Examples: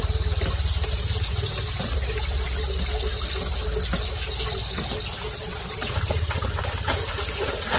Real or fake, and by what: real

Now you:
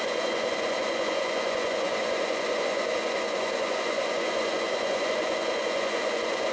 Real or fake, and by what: fake, vocoder, Vocos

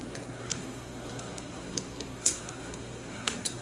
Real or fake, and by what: fake, codec, SNAC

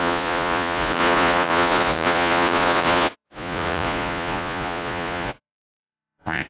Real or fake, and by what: fake, vocoder, Vocos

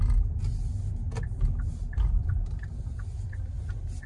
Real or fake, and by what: real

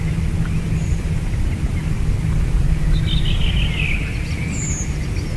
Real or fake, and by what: real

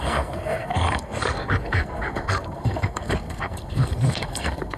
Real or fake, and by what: fake, codec, SNAC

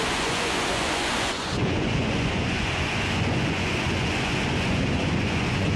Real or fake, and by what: fake, vocoder, Vocos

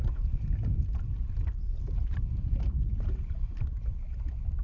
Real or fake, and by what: real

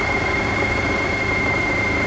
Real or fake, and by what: real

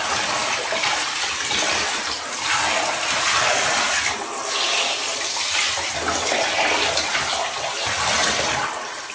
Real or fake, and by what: real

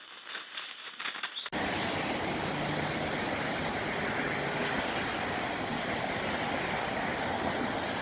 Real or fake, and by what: real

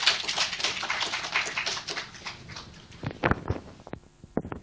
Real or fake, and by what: fake, vocoder, BigVGAN v2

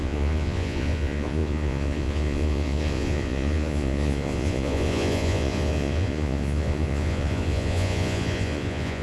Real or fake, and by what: fake, vocoder, Vocos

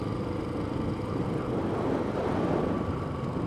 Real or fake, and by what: real